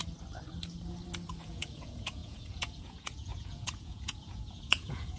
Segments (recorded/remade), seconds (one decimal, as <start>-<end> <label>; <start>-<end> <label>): 0.0-1.4 recorded; 1.4-5.2 remade